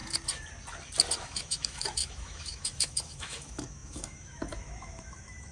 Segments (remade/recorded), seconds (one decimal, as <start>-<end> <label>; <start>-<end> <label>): 0.0-1.2 recorded; 1.2-5.5 remade